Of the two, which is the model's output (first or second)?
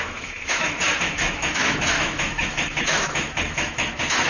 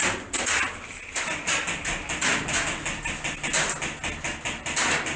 first